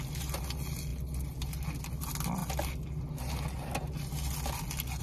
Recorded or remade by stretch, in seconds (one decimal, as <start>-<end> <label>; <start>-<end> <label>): 0.0-5.0 recorded